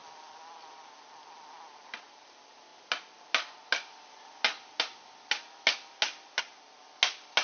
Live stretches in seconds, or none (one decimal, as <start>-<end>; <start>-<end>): 0.0-7.4